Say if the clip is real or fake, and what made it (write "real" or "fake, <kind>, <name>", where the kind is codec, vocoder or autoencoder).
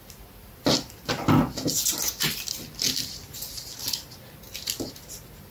real